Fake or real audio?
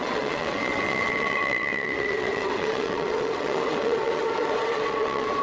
fake